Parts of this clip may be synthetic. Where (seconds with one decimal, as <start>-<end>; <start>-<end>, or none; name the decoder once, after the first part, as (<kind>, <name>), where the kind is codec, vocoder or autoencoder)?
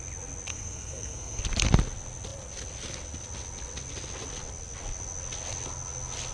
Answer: 0.5-1.4 (codec, SNAC)